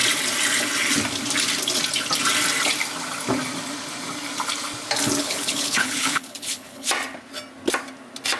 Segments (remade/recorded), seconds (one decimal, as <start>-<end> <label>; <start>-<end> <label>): 0.0-5.2 recorded; 5.2-6.9 remade; 6.9-8.4 recorded